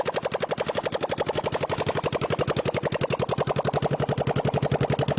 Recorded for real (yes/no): yes